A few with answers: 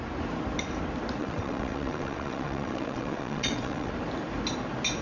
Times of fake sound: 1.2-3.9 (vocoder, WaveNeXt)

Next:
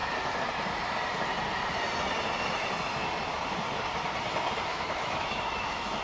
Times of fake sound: 4.7-6.0 (autoencoder, DAC-VAE)

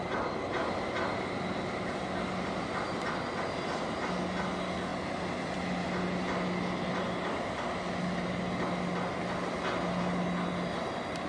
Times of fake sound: none

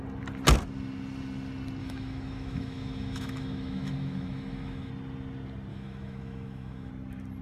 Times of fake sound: 1.8-4.9 (autoencoder, DAC-VAE); 5.7-6.9

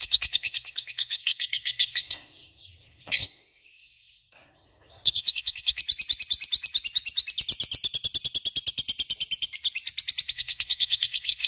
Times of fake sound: 0.0-5.8 (codec, SNAC); 10.3-11.5

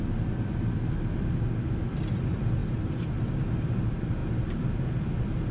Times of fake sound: none

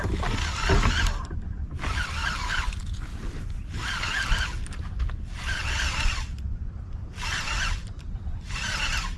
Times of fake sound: none